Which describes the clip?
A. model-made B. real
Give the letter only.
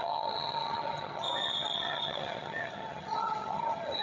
A